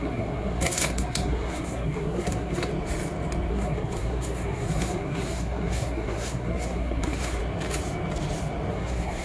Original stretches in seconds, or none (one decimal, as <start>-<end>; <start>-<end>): 2.7-3.5; 7.4-8.7